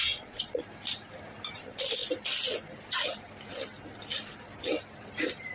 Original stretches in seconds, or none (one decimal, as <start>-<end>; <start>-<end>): 0.6-5.5